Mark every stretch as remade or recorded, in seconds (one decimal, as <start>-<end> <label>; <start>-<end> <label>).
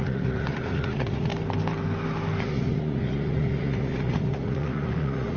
0.0-1.3 remade; 1.3-2.4 recorded; 2.4-5.4 remade